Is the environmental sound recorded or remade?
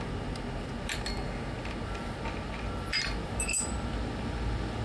recorded